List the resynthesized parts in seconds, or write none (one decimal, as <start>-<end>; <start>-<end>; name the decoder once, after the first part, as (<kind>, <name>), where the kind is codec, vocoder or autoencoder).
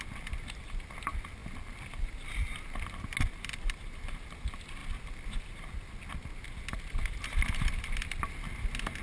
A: none